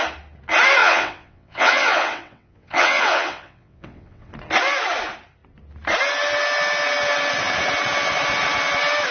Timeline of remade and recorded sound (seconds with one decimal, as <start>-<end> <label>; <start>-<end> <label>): 0.0-0.8 recorded; 0.8-4.3 remade; 4.3-9.1 recorded